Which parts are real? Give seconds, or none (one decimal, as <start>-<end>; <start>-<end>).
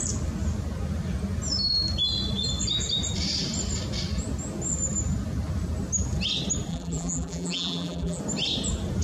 0.0-6.7; 8.2-9.0